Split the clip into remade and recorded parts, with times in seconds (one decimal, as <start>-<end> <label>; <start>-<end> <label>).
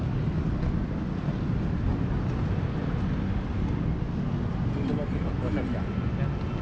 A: 0.0-6.6 recorded